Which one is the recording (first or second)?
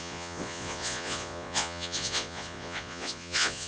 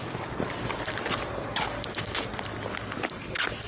second